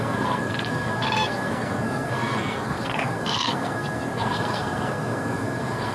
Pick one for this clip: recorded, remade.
remade